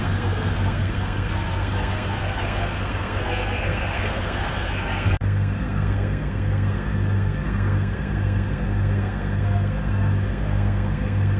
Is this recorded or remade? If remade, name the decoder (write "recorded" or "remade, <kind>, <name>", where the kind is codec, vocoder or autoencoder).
remade, codec, SNAC